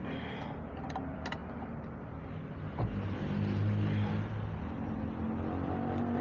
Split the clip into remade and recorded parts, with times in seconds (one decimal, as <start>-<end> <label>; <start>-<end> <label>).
0.0-6.2 recorded